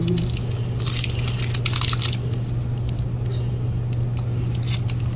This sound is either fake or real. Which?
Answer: real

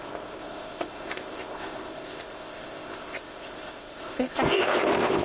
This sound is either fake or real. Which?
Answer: fake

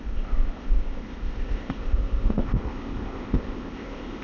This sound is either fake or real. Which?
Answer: fake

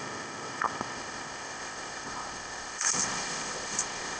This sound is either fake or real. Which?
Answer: fake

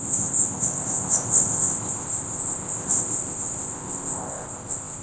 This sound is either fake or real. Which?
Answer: fake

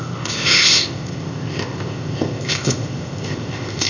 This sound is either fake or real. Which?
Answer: fake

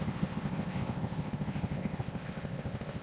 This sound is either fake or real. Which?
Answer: fake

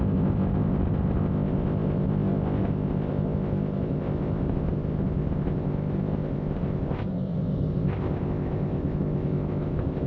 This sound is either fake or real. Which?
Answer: fake